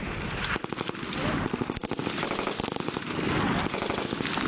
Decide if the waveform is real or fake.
fake